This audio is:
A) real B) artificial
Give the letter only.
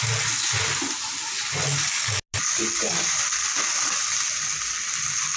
A